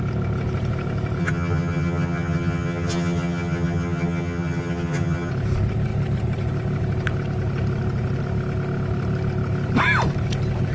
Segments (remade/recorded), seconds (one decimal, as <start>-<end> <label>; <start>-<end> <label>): 0.0-1.2 recorded; 1.2-5.3 remade; 5.3-10.7 recorded